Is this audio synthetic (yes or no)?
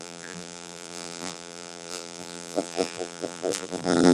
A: yes